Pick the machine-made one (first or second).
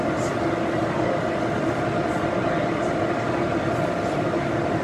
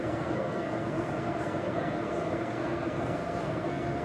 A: second